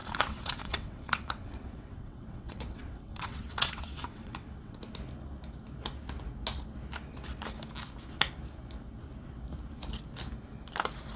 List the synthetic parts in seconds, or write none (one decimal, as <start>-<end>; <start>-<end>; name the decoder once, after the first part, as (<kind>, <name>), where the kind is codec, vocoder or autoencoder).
0.0-4.8 (vocoder, WaveNeXt)